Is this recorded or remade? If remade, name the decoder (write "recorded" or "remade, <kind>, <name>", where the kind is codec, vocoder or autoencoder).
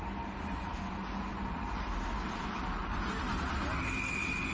recorded